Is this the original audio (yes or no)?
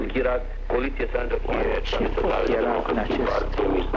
yes